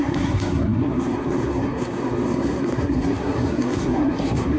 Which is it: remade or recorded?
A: remade